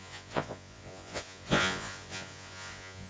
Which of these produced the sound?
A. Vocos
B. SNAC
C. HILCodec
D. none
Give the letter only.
A